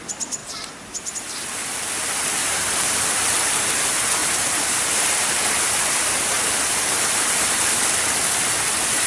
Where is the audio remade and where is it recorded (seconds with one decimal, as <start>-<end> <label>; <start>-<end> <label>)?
0.0-0.4 recorded; 0.4-1.1 remade; 1.1-2.4 recorded; 2.4-3.0 remade; 3.0-4.2 recorded; 4.2-7.3 remade; 7.3-9.1 recorded

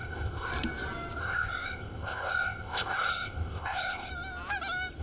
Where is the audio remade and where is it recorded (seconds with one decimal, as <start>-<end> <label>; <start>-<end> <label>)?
0.0-0.5 remade; 0.5-1.2 recorded; 1.2-4.1 remade; 4.1-5.0 recorded

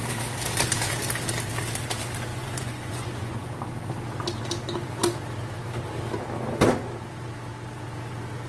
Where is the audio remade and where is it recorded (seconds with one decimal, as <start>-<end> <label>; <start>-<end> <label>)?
0.0-2.3 recorded; 2.3-3.5 remade; 3.5-8.5 recorded

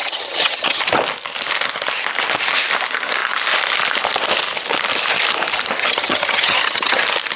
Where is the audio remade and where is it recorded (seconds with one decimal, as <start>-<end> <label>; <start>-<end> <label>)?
0.0-0.8 remade; 0.8-5.8 recorded; 5.8-7.0 remade; 7.0-7.4 recorded